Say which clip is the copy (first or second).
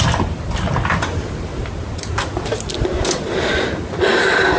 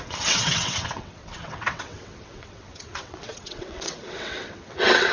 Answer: second